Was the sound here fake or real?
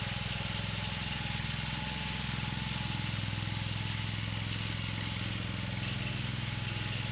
real